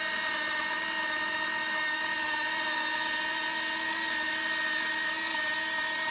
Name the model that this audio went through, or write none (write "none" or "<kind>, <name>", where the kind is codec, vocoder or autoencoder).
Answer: none